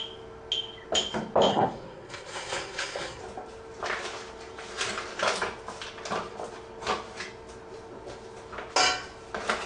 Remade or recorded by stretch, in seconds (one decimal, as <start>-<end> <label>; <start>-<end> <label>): 0.0-1.5 recorded; 1.5-3.2 remade; 3.2-9.7 recorded